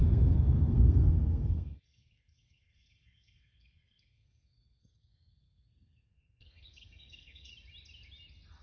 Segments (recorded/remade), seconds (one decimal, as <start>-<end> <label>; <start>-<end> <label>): 0.0-7.5 remade; 7.5-8.6 recorded